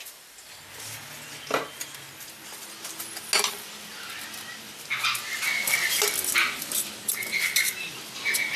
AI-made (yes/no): no